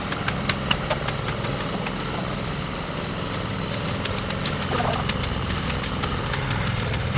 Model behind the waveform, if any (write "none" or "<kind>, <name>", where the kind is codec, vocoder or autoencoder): none